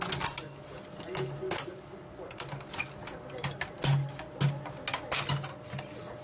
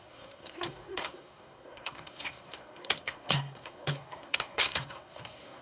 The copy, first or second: second